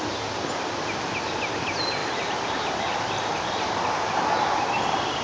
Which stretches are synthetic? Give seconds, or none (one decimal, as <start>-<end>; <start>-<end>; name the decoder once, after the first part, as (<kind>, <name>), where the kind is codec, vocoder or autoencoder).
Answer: none